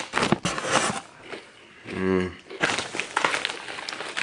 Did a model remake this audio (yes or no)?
no